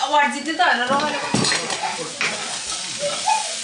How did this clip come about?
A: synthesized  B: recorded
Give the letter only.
B